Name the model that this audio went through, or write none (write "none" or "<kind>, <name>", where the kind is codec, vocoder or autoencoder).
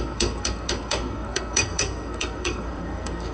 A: codec, SNAC